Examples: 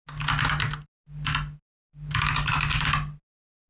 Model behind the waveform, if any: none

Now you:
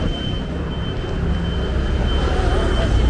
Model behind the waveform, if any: none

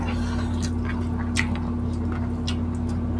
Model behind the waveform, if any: none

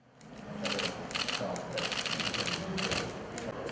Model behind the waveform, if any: none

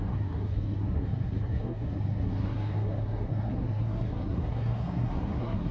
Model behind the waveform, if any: codec, SNAC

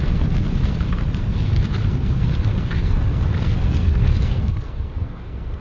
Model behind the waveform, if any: codec, SNAC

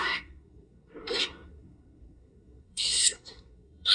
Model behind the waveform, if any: codec, SNAC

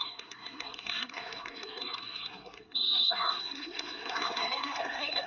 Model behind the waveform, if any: codec, SNAC